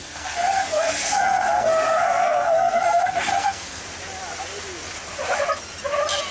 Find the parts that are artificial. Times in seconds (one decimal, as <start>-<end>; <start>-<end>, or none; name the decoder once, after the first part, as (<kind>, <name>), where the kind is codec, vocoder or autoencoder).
0.0-3.8 (codec, SNAC)